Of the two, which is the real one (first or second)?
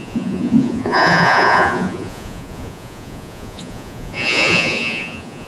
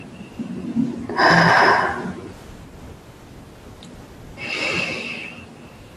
second